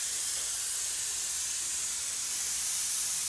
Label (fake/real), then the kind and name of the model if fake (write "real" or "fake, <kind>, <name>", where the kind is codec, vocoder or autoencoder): real